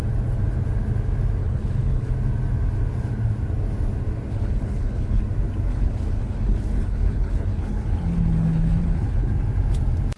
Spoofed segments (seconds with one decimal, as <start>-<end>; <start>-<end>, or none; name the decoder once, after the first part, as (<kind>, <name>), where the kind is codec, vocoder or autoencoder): 1.4-2.1 (codec, HILCodec); 4.3-5.2; 5.7-9.3